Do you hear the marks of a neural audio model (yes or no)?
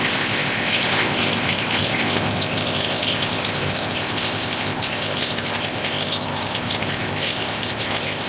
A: yes